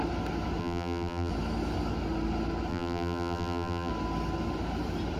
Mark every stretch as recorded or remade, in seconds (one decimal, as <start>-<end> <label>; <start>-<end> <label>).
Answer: 0.0-0.6 recorded; 0.6-1.3 remade; 1.3-2.7 recorded; 2.7-3.9 remade; 3.9-5.2 recorded